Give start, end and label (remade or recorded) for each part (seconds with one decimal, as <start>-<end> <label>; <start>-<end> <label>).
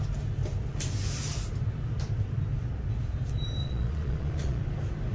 0.0-3.6 recorded; 3.6-4.6 remade; 4.6-5.1 recorded